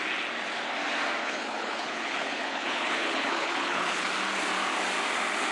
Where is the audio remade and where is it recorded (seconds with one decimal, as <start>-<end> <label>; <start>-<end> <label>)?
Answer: 0.0-1.2 recorded; 1.2-4.1 remade; 4.1-5.5 recorded